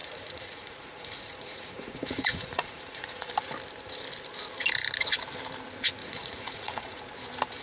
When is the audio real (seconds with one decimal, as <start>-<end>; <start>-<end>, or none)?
3.3-6.0; 7.0-7.6